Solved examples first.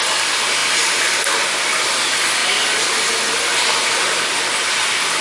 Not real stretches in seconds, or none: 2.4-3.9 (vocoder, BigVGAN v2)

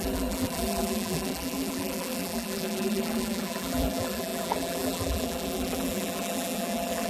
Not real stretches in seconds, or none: 0.0-7.1 (vocoder, BigVGAN v2)

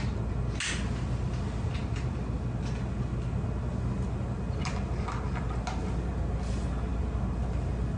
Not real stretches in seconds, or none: none

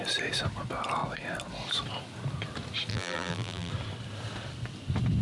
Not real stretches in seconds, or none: 2.9-3.7 (vocoder, BigVGAN v2)

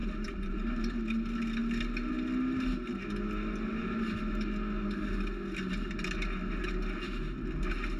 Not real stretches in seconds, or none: 0.0-1.0 (vocoder, BigVGAN v2)

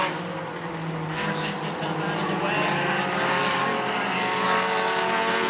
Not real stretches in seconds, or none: none